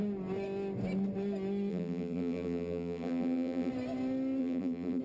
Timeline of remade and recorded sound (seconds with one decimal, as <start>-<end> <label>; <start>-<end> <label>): 0.0-1.7 recorded; 1.7-3.7 remade; 3.7-4.4 recorded; 4.4-5.0 remade